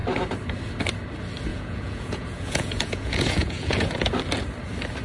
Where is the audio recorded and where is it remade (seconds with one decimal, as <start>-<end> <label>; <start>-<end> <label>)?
0.0-1.5 recorded; 1.5-4.1 remade; 4.1-5.0 recorded